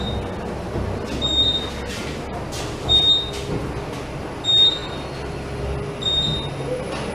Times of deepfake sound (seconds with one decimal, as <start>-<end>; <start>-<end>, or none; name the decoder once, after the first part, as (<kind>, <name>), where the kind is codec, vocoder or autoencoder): none